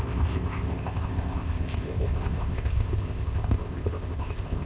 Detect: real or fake fake